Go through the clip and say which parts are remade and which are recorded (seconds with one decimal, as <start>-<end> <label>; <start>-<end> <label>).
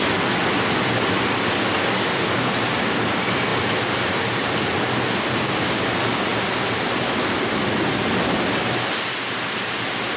0.0-10.2 recorded